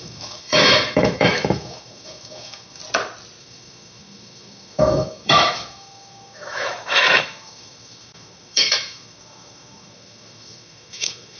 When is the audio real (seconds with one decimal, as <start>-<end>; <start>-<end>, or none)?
2.8-3.4